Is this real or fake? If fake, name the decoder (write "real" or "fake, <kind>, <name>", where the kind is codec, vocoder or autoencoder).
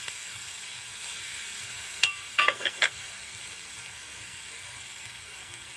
fake, codec, SNAC